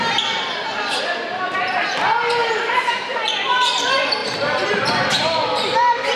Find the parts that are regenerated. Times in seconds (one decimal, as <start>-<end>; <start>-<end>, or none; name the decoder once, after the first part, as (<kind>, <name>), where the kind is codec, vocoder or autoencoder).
2.4-3.2 (vocoder, BigVGAN v2); 4.2-4.7